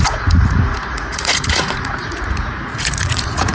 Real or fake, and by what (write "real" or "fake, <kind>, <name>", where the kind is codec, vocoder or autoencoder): fake, vocoder, Vocos